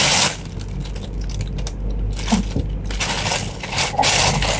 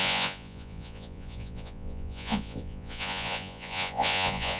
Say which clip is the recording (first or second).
first